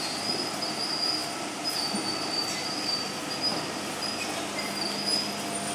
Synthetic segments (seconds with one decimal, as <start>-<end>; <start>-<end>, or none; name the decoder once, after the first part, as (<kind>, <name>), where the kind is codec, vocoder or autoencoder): none